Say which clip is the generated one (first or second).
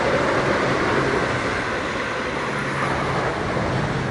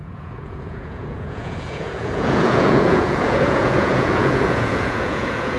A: second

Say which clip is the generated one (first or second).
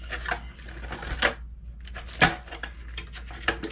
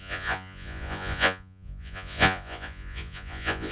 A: second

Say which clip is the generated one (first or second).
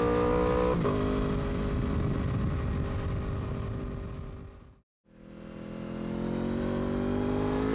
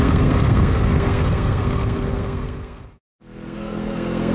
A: second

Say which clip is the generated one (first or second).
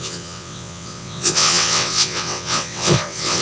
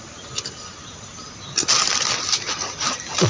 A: first